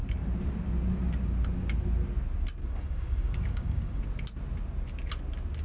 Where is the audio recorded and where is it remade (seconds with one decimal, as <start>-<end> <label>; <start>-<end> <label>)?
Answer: 0.0-2.6 recorded; 2.6-4.0 remade; 4.0-5.6 recorded